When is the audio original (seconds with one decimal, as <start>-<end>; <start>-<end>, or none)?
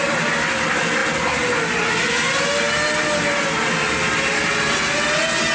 0.0-5.5